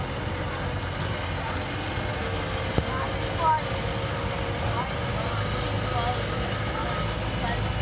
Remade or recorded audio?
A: recorded